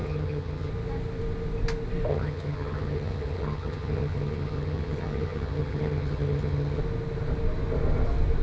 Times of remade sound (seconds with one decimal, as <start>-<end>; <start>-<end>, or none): 0.0-0.7; 2.1-6.8